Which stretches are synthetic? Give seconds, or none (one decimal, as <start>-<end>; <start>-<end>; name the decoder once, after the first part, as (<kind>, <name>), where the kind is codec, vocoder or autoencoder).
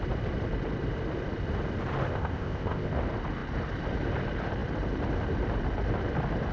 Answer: 2.1-2.9 (codec, ZipCodec)